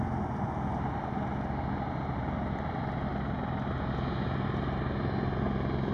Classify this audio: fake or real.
real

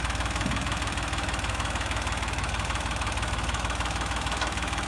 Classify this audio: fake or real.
fake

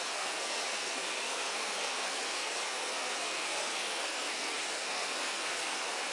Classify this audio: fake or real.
fake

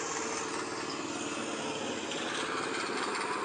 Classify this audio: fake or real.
real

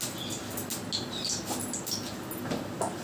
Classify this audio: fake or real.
real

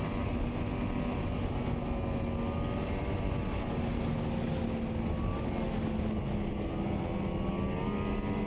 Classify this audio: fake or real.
real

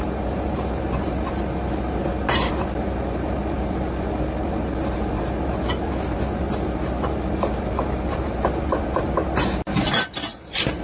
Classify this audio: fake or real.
real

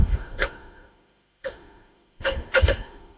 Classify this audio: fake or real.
fake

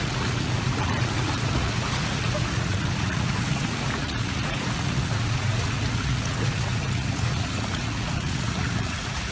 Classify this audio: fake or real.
fake